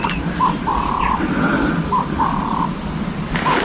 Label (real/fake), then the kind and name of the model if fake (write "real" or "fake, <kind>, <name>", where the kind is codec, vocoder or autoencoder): real